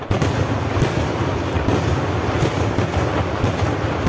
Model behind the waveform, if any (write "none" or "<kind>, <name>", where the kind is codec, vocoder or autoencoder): none